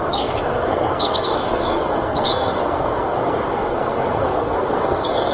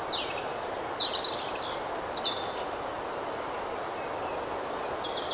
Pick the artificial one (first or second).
first